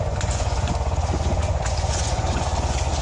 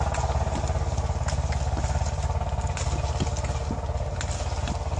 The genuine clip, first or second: second